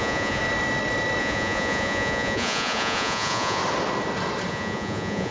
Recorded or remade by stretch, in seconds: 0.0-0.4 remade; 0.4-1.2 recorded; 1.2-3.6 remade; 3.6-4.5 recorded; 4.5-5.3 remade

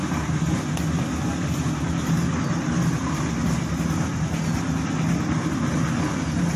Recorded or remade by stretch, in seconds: 0.0-6.6 recorded

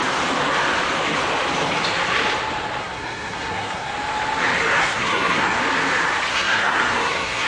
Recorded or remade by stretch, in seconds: 0.0-2.8 recorded; 2.8-3.9 remade; 3.9-4.8 recorded; 4.8-5.6 remade; 5.6-6.3 recorded; 6.3-7.5 remade

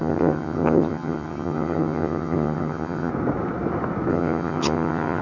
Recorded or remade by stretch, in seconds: 0.0-3.1 remade; 3.1-4.1 recorded; 4.1-5.2 remade

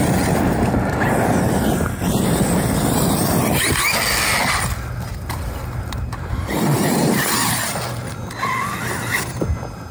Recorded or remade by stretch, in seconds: 0.0-5.1 recorded; 5.1-7.7 remade; 7.7-9.9 recorded